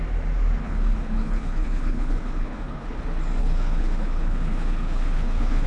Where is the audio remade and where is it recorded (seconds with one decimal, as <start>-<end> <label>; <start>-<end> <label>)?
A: 0.0-0.6 recorded; 0.6-3.0 remade; 3.0-3.4 recorded; 3.4-5.7 remade